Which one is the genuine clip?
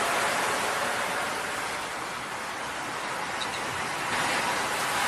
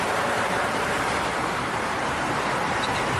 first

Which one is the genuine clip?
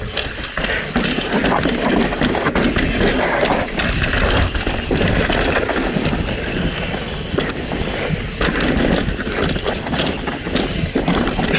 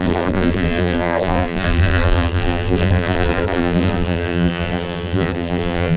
first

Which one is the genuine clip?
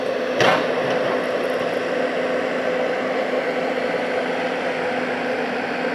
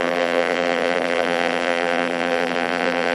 first